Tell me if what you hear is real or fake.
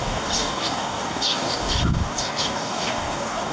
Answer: fake